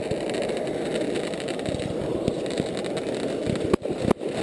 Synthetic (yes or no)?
no